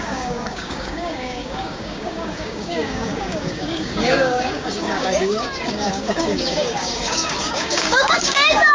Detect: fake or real fake